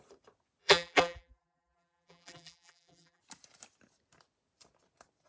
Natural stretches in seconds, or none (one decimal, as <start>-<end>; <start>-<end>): 0.0-0.6; 3.2-5.3